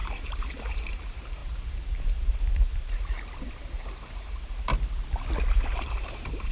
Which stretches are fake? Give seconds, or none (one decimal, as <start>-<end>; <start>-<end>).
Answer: 0.0-4.7; 5.5-6.5

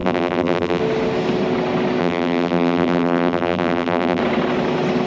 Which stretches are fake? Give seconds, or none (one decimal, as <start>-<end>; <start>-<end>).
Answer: 0.0-0.8; 2.0-4.2